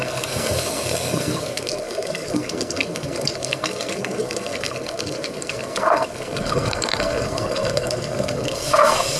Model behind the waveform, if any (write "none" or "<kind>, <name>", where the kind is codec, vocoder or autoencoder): codec, SNAC